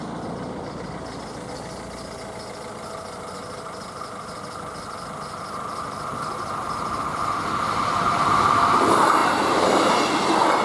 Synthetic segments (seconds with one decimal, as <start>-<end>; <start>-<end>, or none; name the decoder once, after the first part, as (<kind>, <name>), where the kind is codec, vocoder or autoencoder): 9.2-9.9 (vocoder, BigVGAN v2)